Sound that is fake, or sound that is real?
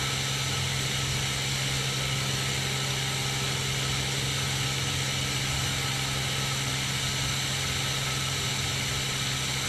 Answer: real